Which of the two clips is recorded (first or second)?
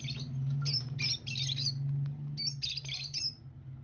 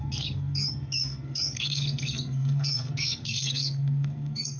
first